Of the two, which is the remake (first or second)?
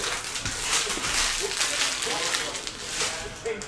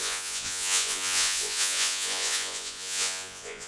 second